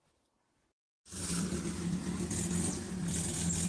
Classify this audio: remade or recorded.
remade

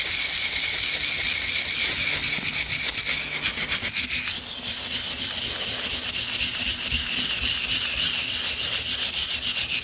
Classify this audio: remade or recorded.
recorded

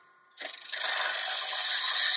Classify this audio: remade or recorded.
recorded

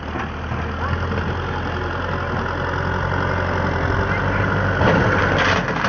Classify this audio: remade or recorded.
recorded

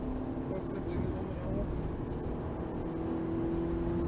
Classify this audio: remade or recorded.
recorded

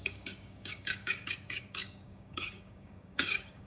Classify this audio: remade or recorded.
remade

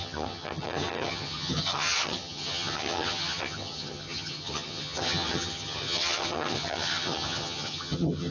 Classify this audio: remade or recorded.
remade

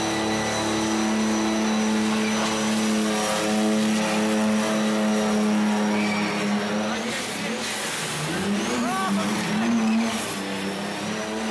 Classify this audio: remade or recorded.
recorded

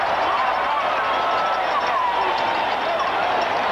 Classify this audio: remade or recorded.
recorded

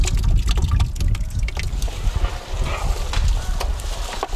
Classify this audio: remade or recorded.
recorded